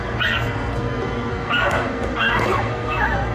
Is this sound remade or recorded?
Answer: remade